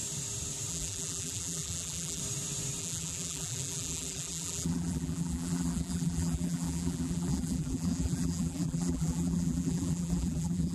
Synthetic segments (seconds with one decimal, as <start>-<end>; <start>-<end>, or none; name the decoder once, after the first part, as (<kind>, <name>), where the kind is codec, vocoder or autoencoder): 0.7-2.2 (vocoder, BigVGAN v2); 2.8-10.7